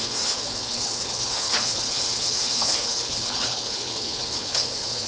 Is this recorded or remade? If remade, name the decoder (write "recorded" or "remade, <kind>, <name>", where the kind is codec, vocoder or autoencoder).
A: remade, codec, HILCodec